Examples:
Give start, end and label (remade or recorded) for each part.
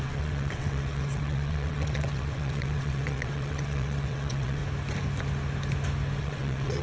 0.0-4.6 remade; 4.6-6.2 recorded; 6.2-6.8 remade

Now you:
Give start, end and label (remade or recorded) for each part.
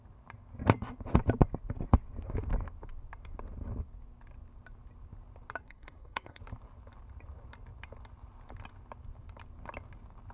0.0-5.6 recorded; 5.6-6.4 remade; 6.4-10.3 recorded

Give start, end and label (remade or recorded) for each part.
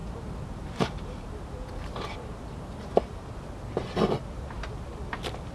0.0-3.3 remade; 3.3-5.5 recorded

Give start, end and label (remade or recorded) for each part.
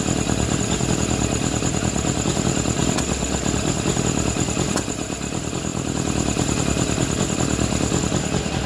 0.0-8.7 recorded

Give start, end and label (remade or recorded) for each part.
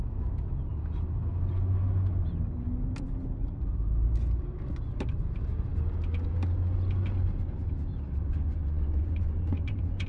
0.0-8.3 recorded; 8.3-10.1 remade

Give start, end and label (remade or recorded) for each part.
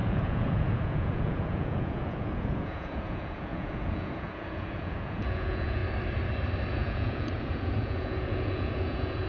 0.0-5.8 remade; 5.8-6.7 recorded; 6.7-9.3 remade